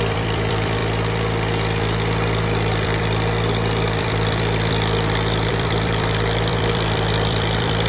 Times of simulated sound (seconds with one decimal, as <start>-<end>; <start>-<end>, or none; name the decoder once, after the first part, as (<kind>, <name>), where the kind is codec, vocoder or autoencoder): 0.0-0.8 (vocoder, BigVGAN v2); 1.8-7.9